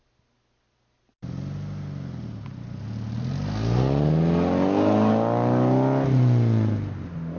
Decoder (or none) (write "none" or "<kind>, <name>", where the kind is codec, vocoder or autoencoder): none